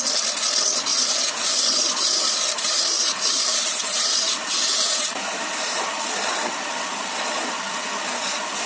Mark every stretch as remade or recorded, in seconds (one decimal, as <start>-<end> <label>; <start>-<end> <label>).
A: 0.0-0.9 recorded; 0.9-5.8 remade; 5.8-8.7 recorded

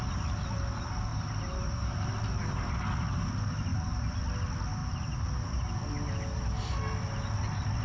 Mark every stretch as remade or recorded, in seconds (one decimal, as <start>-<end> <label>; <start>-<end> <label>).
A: 0.0-1.1 recorded; 1.1-2.1 remade; 2.1-3.7 recorded; 3.7-4.2 remade; 4.2-4.8 recorded; 4.8-5.8 remade; 5.8-7.8 recorded

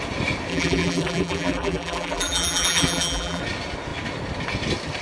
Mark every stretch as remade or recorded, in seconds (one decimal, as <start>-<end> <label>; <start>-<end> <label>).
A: 0.0-0.5 recorded; 0.5-3.4 remade; 3.4-5.0 recorded

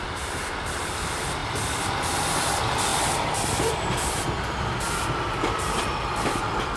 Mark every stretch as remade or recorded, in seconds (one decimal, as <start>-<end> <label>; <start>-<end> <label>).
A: 0.0-6.8 remade